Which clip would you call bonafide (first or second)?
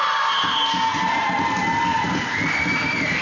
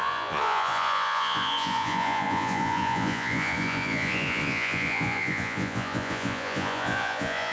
first